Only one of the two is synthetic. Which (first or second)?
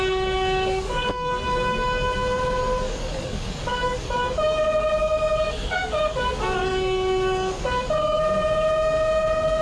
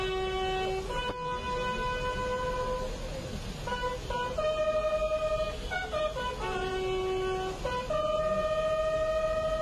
first